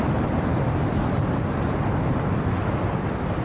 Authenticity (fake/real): real